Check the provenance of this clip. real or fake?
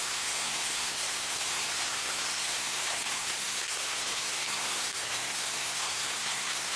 fake